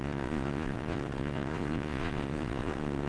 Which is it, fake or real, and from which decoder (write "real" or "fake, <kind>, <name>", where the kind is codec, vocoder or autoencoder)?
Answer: fake, vocoder, Vocos